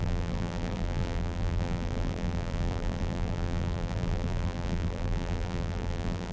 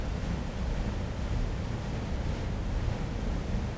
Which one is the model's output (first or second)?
first